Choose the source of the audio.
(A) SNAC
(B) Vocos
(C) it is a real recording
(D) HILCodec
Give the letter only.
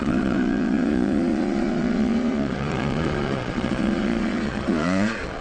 B